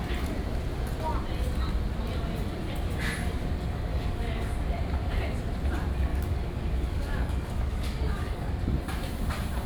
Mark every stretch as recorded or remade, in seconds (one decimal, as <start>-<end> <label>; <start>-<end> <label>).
0.0-3.9 recorded; 3.9-4.5 remade; 4.5-6.1 recorded; 6.1-8.5 remade; 8.5-9.7 recorded